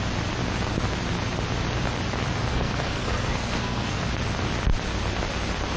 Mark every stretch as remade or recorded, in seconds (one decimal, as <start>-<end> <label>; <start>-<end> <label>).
0.0-2.5 recorded; 2.5-4.0 remade; 4.0-5.8 recorded